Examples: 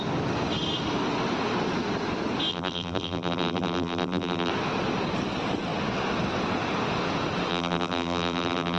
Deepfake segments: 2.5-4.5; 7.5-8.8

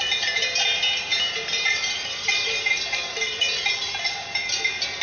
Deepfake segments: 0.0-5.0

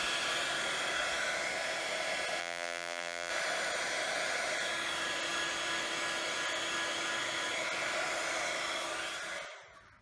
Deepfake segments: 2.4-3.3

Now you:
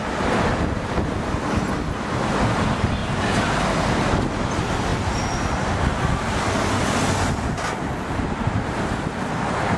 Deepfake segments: 3.0-4.1

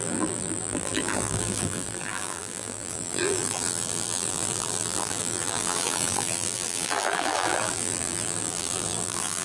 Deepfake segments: 0.0-9.4

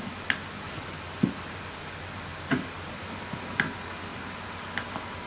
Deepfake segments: 2.3-3.0; 4.1-5.3

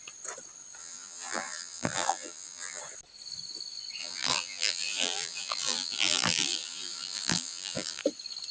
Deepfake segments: 0.8-2.8; 4.0-8.0